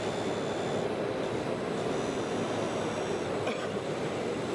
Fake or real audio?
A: real